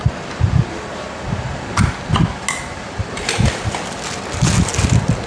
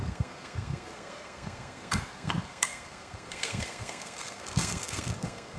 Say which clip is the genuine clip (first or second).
first